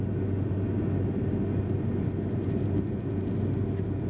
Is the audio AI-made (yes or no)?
no